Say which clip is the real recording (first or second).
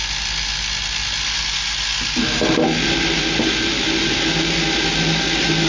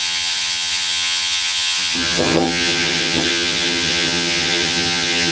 first